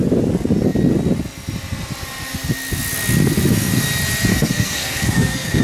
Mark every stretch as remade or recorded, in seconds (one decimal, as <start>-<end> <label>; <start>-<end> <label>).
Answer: 0.0-4.3 recorded; 4.3-5.6 remade